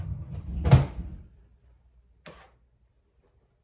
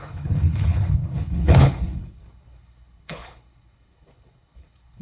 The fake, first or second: second